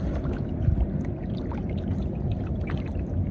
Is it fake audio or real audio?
real